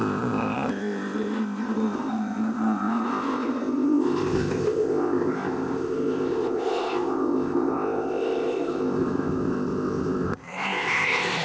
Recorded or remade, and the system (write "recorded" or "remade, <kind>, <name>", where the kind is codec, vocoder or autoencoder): remade, codec, ZipCodec